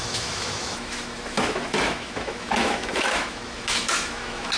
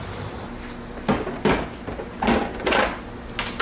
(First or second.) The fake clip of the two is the first